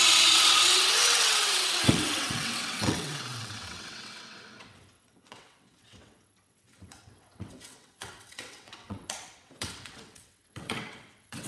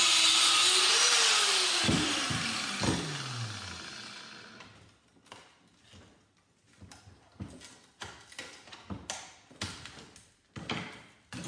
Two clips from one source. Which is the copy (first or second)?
first